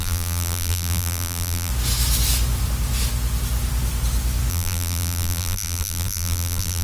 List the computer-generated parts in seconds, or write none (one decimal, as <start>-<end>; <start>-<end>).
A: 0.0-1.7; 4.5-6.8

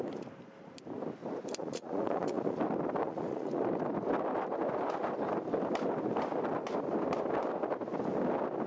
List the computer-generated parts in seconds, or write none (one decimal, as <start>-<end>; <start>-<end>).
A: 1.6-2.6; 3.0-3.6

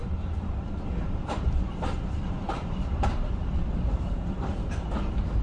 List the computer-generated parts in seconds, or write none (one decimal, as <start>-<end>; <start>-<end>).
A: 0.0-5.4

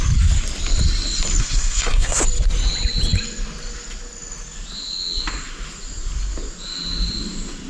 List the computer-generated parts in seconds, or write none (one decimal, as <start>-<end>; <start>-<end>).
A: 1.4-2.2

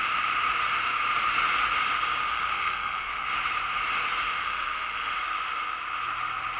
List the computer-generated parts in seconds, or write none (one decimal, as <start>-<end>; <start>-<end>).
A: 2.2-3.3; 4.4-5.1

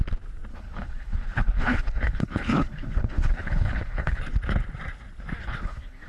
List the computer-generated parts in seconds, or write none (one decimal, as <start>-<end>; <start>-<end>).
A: 0.5-4.2; 5.4-6.1

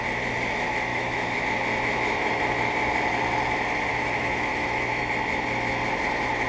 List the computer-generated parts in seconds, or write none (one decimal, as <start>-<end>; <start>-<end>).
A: 0.9-1.4; 3.9-5.0

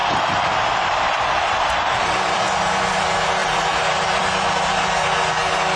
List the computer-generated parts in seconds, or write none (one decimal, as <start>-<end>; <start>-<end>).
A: 0.0-2.6; 3.4-4.2